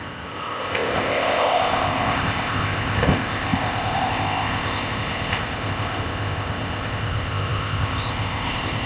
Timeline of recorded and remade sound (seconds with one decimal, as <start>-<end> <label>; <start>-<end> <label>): 0.0-8.9 remade